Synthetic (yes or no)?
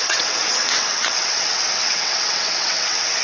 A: yes